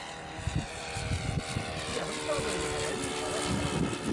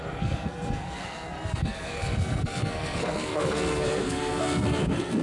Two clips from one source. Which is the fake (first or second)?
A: second